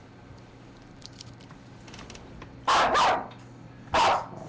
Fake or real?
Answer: fake